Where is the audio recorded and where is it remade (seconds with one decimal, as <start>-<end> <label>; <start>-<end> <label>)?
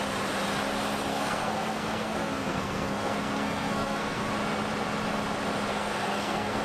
0.0-1.1 recorded; 1.1-4.3 remade; 4.3-5.7 recorded; 5.7-6.6 remade